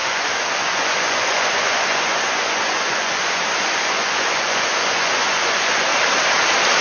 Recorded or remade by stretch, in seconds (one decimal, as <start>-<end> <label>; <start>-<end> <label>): 0.0-5.9 remade; 5.9-6.8 recorded